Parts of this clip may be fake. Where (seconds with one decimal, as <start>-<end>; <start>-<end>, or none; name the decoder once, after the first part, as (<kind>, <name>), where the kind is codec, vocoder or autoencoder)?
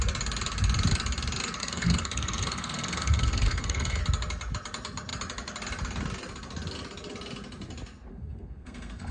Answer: 1.6-4.0 (codec, SNAC); 8.1-9.1